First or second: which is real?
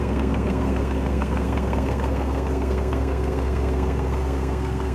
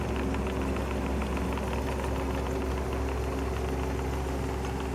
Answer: second